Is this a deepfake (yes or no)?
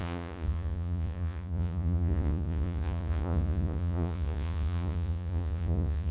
yes